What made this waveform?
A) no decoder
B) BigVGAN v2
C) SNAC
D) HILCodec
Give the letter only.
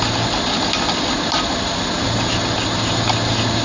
A